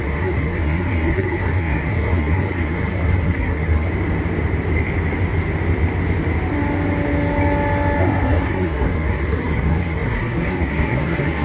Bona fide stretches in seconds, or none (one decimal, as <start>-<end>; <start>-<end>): 3.9-8.0